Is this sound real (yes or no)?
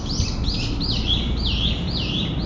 yes